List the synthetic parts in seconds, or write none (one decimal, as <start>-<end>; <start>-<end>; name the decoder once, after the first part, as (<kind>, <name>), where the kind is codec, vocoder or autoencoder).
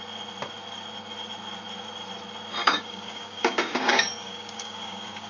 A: 2.6-5.3 (codec, DAC)